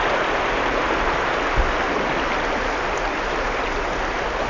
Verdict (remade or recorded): recorded